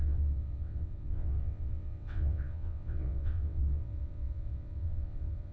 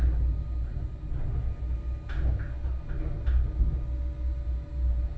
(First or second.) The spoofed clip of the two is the first